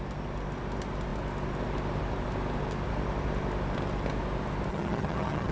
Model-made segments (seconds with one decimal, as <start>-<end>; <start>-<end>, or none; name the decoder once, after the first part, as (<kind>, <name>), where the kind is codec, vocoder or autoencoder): 4.7-5.5 (vocoder, HiFi-GAN)